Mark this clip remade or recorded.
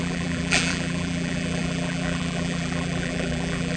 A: remade